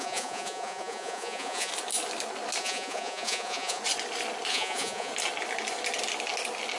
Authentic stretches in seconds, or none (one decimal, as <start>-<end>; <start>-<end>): 1.7-2.6; 3.8-4.5; 5.1-6.8